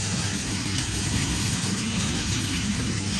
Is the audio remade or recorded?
remade